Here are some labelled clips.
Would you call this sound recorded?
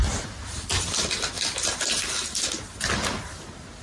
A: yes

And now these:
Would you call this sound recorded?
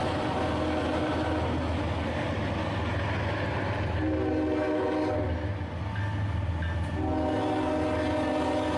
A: yes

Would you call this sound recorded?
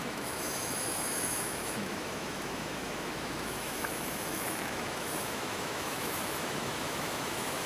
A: no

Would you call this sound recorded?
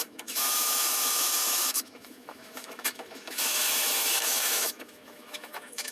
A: no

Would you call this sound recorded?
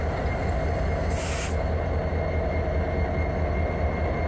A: yes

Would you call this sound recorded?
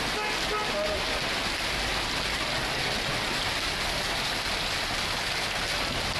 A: yes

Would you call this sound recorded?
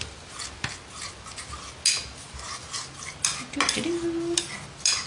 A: yes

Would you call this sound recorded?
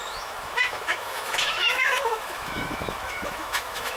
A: no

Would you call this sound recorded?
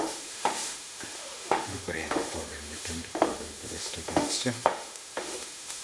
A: no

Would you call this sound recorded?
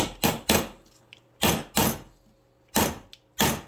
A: yes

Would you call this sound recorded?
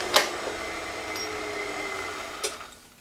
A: yes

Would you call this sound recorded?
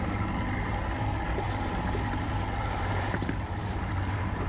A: yes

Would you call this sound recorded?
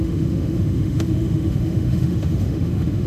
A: no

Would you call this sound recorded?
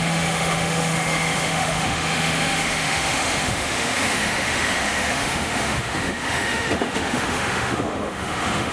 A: no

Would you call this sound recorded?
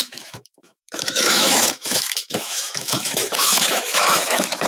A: no